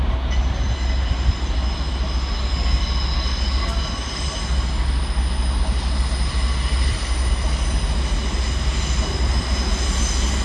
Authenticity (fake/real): real